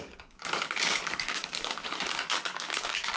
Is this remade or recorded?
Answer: remade